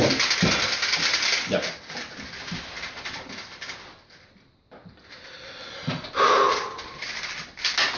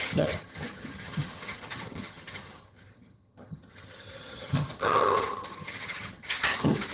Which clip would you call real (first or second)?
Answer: first